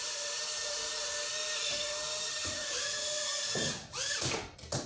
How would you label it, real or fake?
real